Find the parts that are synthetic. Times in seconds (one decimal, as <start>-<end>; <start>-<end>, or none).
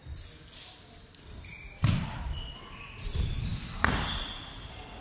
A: 3.5-4.4